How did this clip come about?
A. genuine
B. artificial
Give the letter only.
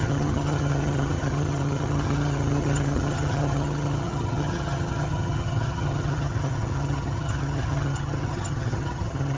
B